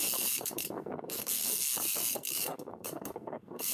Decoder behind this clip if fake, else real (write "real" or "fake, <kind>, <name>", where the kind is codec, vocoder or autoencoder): fake, codec, SNAC